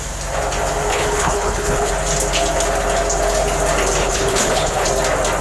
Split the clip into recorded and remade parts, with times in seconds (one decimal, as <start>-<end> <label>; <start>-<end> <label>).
0.0-0.9 recorded; 0.9-1.9 remade; 1.9-4.0 recorded; 4.0-4.9 remade; 4.9-5.4 recorded